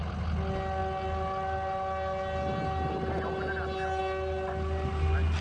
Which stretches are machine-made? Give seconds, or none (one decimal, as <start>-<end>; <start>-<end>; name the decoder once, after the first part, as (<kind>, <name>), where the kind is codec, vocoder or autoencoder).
none